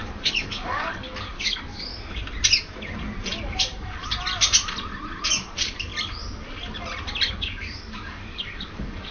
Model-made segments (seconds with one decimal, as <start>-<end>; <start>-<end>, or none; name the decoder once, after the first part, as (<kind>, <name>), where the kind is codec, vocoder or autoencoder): 0.0-1.9 (codec, DAC); 3.4-4.0; 5.3-5.9; 7.3-9.1